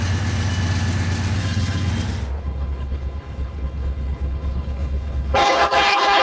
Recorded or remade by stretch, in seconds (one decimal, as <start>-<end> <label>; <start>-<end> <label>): 0.0-1.4 recorded; 1.4-1.9 remade; 1.9-2.4 recorded; 2.4-6.2 remade